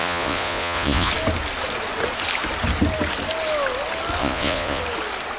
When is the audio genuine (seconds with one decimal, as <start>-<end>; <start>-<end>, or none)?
1.1-4.2; 4.8-5.4